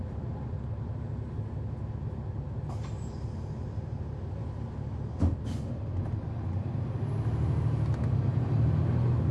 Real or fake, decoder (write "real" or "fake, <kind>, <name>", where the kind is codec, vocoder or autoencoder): real